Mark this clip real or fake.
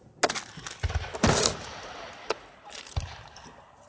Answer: real